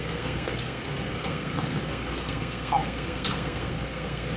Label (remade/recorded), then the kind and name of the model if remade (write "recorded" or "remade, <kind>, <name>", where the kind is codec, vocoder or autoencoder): remade, codec, SNAC